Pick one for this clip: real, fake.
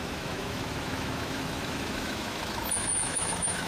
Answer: fake